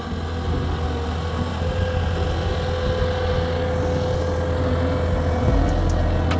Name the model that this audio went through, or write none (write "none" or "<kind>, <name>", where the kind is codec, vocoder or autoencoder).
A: none